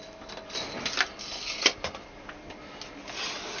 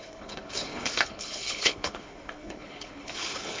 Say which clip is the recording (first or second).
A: first